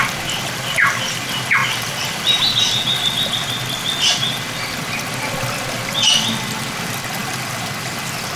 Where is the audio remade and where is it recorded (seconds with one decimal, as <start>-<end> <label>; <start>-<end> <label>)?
0.0-8.4 recorded